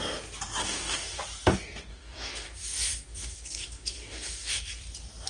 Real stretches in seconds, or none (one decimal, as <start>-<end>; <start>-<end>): 0.0-0.6; 1.2-1.9; 4.8-5.3